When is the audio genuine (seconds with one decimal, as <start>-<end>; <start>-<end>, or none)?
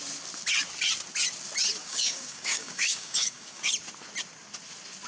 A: 0.0-1.8; 3.7-5.1